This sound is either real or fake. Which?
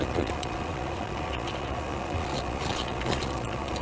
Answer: fake